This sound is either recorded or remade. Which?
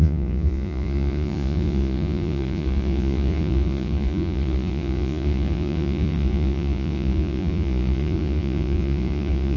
remade